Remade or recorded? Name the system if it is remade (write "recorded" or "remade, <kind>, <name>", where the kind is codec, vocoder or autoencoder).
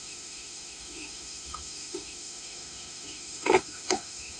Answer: remade, autoencoder, DAC-VAE